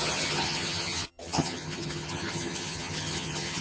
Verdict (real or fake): fake